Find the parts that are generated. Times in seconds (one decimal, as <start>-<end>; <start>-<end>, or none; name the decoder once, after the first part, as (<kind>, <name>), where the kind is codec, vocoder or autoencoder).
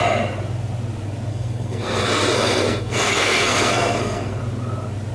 1.3-4.4 (codec, SNAC)